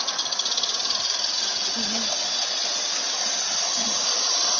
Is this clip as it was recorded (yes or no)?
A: yes